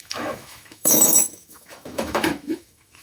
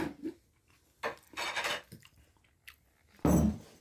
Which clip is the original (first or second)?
second